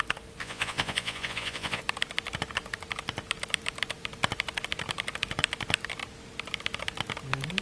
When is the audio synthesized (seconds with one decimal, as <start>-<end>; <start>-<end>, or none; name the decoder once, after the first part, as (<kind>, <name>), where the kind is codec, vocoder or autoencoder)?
0.4-1.8 (vocoder, Vocos)